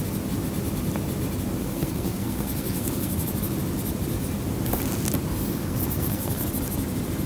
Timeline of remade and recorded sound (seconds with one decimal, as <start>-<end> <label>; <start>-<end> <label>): 0.0-1.6 recorded; 1.6-3.3 remade; 3.3-5.5 recorded; 5.5-6.5 remade; 6.5-7.3 recorded